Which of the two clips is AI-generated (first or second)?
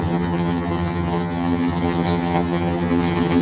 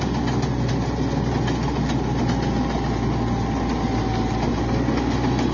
first